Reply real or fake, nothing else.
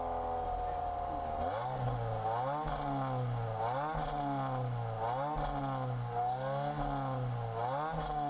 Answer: real